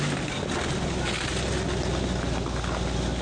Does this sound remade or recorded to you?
recorded